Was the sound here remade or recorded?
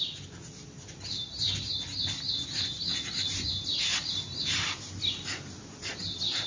recorded